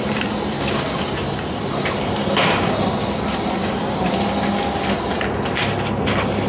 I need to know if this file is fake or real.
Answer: real